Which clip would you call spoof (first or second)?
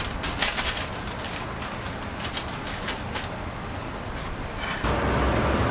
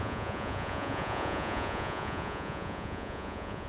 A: second